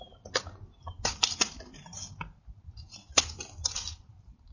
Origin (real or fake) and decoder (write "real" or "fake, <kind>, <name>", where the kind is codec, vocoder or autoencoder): fake, vocoder, BigVGAN v2